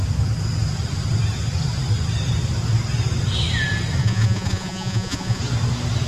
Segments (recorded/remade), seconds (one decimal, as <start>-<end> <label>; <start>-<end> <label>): 0.0-4.0 recorded; 4.0-5.4 remade; 5.4-6.1 recorded